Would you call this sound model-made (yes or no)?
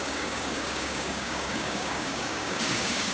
yes